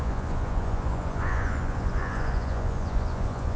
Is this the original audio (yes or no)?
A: no